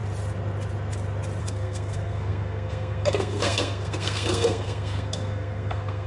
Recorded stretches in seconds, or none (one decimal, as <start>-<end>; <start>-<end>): 0.0-1.4